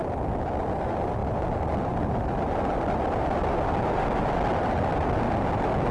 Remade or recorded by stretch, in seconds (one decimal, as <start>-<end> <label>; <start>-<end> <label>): 0.0-5.9 recorded